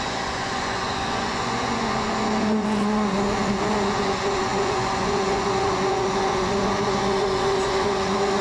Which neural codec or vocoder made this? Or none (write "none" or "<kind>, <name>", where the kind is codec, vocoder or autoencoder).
vocoder, Vocos